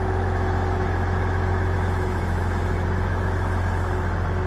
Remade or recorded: remade